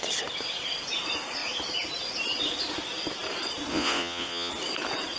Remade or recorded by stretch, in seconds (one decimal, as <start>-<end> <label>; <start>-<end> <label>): 0.0-3.7 recorded; 3.7-4.5 remade; 4.5-5.2 recorded